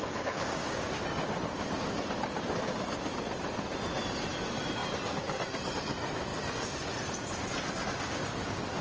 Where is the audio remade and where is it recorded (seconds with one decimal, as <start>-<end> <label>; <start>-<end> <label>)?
0.0-0.9 remade; 0.9-8.8 recorded